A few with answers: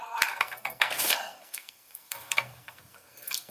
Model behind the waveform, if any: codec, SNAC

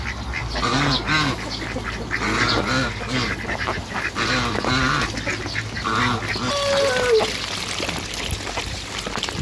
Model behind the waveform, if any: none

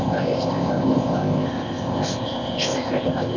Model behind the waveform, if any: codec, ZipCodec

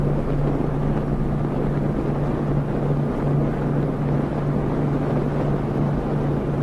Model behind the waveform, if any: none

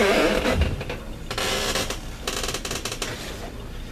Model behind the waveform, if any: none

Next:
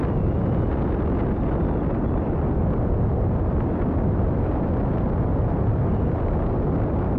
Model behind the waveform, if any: none